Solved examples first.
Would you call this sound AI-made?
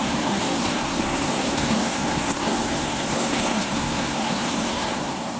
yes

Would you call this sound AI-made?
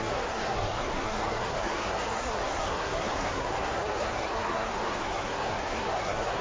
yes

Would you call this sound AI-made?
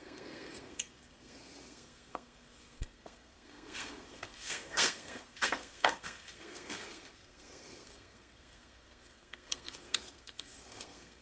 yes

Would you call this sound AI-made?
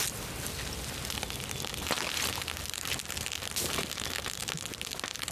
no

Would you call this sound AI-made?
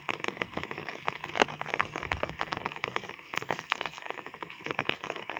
yes